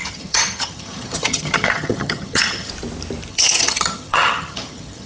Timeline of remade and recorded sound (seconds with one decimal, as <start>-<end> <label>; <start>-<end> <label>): 0.0-2.7 remade; 2.7-3.3 recorded; 3.3-5.1 remade